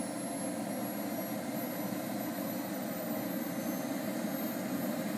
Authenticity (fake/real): real